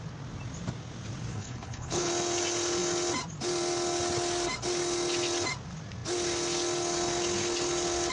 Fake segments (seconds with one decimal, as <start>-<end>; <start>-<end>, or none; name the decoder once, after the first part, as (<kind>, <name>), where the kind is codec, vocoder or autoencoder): 1.3-2.1 (codec, HILCodec)